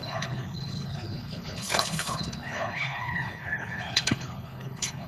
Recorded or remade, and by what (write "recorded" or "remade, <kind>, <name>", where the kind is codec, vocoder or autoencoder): remade, codec, HILCodec